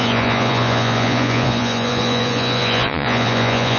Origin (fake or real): fake